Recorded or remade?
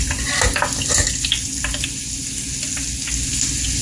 recorded